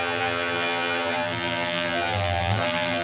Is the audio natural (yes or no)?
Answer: no